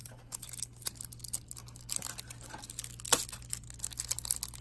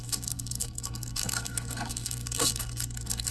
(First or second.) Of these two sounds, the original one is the first